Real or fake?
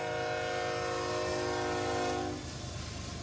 real